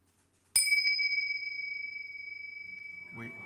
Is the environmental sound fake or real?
real